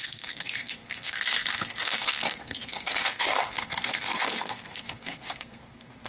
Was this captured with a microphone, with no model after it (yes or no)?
no